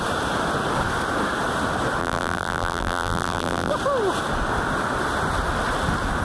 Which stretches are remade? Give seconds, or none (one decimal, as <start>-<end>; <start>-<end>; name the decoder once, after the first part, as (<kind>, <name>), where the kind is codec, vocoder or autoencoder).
2.0-3.7 (vocoder, BigVGAN v2)